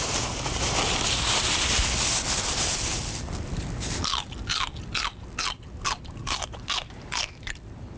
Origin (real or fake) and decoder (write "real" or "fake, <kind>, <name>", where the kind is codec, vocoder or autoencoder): real